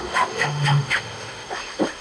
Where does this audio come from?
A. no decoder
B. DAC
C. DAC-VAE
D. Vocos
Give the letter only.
C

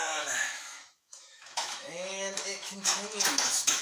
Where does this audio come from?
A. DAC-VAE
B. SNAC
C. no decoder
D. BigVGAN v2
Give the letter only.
A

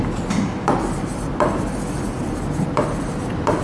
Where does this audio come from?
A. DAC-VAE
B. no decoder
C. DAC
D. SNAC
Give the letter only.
B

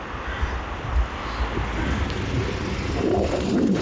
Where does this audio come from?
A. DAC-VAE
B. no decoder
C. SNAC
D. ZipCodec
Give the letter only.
B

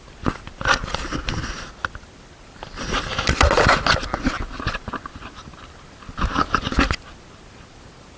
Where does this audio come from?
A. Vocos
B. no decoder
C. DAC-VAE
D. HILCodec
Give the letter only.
B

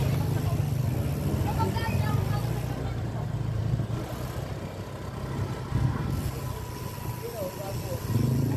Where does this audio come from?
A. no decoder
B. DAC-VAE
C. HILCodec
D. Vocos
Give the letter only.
A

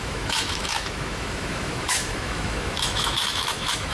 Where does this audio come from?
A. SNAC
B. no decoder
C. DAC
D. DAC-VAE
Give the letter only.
D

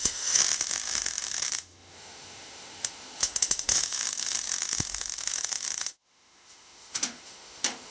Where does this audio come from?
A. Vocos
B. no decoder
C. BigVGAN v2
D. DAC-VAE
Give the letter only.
D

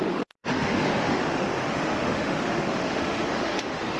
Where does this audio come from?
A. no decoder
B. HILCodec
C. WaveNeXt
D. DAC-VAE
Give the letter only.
D